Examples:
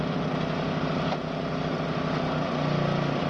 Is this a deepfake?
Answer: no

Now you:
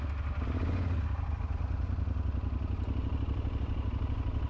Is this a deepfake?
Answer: no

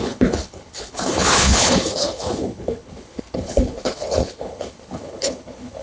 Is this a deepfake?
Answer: yes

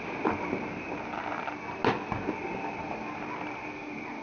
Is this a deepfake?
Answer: no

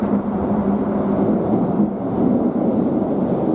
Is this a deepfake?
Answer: no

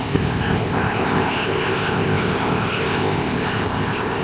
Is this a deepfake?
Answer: yes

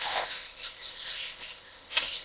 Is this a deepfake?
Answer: yes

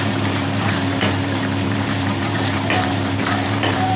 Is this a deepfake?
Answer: yes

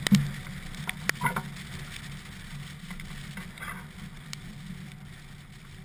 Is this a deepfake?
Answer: no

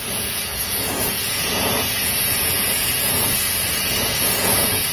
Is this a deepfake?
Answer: yes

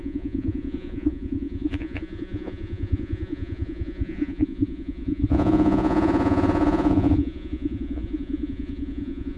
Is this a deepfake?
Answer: yes